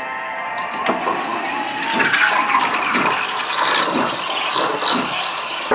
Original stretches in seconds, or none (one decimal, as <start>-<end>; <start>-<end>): 0.0-1.3; 4.7-5.7